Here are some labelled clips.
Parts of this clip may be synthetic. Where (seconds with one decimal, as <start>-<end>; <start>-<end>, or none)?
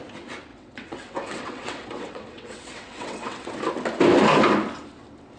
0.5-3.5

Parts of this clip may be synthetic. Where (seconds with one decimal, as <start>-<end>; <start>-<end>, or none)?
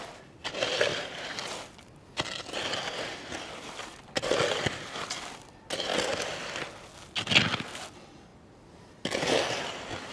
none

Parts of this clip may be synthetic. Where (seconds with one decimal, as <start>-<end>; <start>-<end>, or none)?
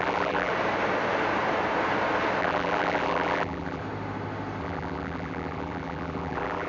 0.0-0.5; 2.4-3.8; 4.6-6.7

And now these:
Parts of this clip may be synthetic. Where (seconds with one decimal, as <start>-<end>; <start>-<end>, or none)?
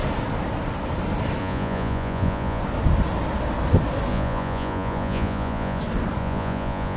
1.4-2.6; 4.1-5.8; 6.2-7.0